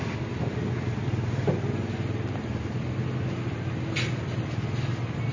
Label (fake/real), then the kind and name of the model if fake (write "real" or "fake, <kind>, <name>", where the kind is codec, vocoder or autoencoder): real